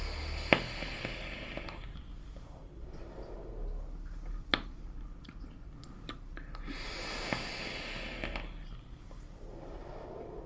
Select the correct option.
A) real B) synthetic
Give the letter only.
A